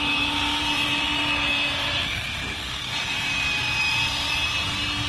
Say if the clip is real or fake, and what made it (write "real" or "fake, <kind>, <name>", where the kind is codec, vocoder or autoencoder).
fake, vocoder, BigVGAN v2